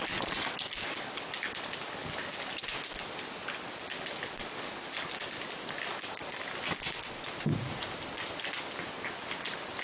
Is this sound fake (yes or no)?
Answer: no